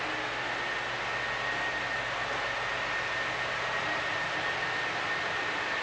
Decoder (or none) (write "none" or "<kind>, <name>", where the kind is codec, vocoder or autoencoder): none